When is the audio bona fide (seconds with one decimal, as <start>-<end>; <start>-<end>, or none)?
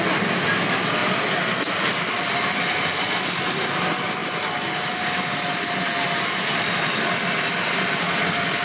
0.0-8.6